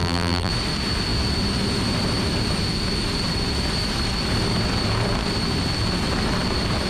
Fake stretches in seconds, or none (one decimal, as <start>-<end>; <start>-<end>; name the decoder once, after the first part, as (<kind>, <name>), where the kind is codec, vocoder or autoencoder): 0.0-0.5 (vocoder, BigVGAN v2)